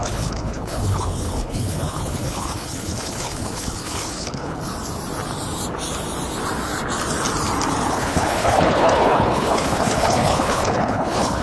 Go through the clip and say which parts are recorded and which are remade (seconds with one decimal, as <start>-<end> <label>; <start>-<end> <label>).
0.0-4.7 remade; 4.7-7.9 recorded; 7.9-11.4 remade